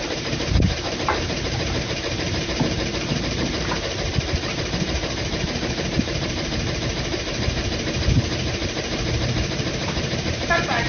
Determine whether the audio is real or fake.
fake